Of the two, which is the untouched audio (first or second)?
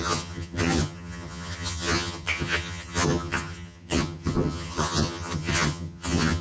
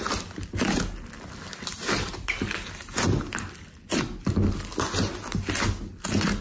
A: second